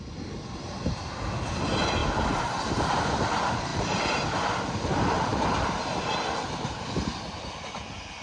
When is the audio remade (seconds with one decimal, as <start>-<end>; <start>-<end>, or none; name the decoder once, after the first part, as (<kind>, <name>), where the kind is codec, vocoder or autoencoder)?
3.7-4.5 (vocoder, BigVGAN v2)